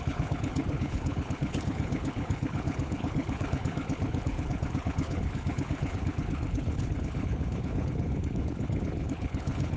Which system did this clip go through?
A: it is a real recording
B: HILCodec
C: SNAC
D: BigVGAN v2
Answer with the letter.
B